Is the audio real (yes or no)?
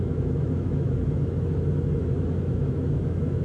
no